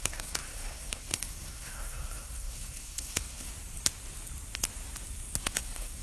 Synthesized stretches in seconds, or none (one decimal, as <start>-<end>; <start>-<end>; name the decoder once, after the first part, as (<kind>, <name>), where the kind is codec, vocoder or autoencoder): 0.0-3.5 (codec, SNAC); 5.4-6.0